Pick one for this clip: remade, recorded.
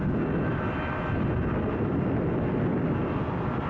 recorded